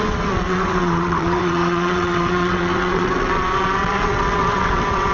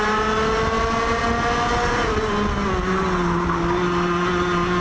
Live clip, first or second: second